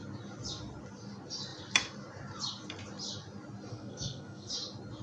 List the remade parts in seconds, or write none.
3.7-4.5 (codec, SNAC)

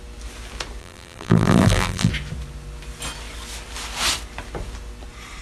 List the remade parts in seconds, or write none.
0.8-2.1 (vocoder, BigVGAN v2)

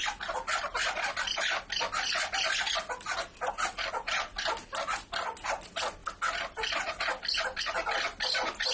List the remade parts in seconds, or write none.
none